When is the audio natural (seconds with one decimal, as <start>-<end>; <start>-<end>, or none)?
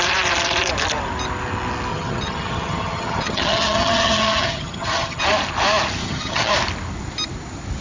0.0-1.9; 5.2-6.0; 6.5-7.8